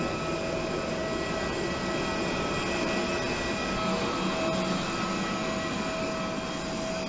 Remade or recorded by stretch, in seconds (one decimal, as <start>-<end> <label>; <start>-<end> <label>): 0.0-7.1 recorded